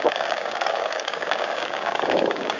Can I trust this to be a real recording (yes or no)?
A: no